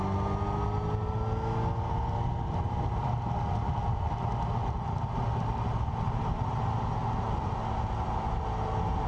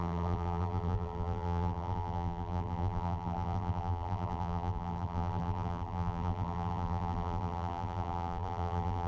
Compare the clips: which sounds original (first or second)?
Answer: first